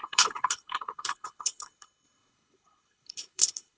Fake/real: fake